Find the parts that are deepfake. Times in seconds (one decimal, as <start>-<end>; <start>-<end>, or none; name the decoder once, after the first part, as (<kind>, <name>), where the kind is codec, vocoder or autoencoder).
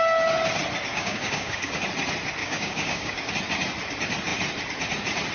0.9-1.8 (codec, DAC); 2.4-3.3